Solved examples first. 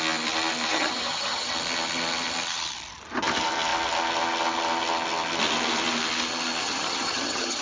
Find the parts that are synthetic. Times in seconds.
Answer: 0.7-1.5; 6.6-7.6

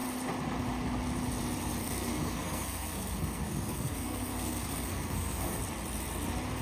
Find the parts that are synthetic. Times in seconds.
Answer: 1.8-5.6

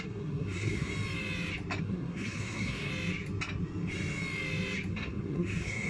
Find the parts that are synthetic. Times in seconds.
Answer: 0.0-0.9; 1.8-2.9; 4.9-5.9

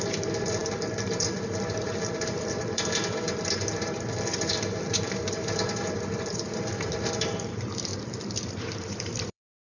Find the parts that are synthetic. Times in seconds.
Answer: 0.0-7.9; 8.5-9.7